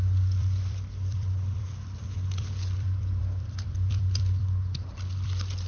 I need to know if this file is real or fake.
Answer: fake